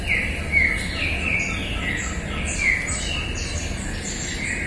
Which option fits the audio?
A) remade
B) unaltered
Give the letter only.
B